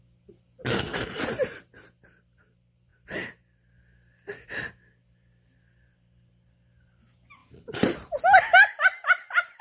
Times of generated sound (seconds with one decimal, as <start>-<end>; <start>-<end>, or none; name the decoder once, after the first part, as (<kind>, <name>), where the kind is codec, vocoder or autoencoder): 0.9-1.7 (vocoder, BigVGAN v2); 7.4-8.2